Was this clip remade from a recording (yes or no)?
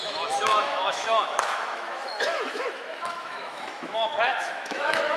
yes